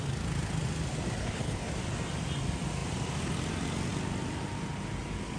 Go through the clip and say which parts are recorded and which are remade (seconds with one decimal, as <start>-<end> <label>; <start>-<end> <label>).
0.0-1.2 recorded; 1.2-1.7 remade; 1.7-5.4 recorded